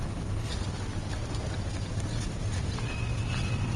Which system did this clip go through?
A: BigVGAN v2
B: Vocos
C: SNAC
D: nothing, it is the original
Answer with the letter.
D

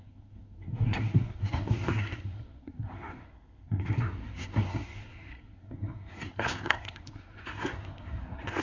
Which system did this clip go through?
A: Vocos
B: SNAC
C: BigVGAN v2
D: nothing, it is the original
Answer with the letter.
B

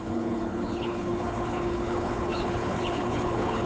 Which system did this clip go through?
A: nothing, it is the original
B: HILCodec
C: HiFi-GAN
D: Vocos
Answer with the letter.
B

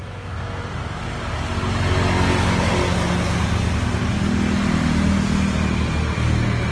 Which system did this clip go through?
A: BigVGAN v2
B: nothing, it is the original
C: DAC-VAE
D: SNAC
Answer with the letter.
B